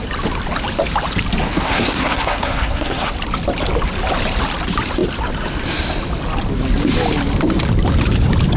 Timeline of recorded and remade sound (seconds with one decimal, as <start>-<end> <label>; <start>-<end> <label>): 0.0-1.4 recorded; 1.4-3.1 remade; 3.1-8.6 recorded